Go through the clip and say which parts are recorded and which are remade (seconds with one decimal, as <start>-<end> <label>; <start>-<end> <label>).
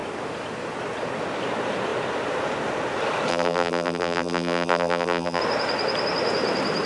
0.0-3.3 recorded; 3.3-5.4 remade; 5.4-6.9 recorded